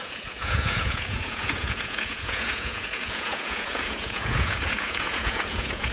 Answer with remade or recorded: remade